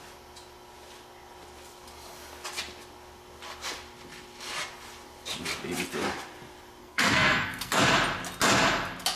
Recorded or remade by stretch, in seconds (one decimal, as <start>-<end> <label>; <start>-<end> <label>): 0.0-6.8 recorded; 6.8-7.8 remade; 7.8-9.2 recorded